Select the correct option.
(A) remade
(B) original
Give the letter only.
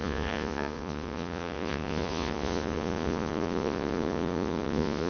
A